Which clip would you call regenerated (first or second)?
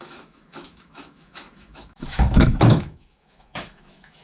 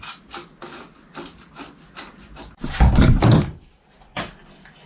first